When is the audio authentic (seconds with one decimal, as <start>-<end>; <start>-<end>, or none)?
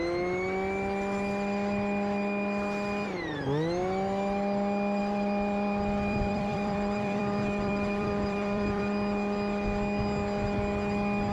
0.0-5.0; 8.8-11.3